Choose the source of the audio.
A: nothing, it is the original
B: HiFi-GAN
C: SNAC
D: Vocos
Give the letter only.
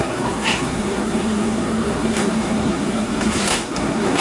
C